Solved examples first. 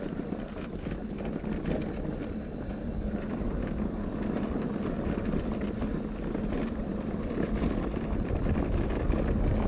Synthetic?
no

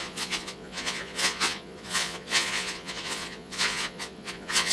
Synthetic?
yes